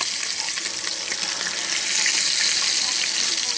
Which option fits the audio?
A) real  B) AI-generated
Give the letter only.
A